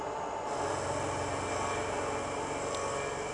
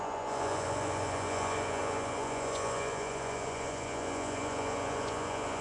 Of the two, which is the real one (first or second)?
first